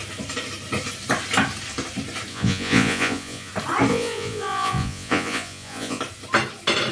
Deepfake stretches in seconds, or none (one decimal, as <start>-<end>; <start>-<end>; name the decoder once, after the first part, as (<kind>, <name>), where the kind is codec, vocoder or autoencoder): 2.3-3.5 (vocoder, Vocos); 3.9-6.0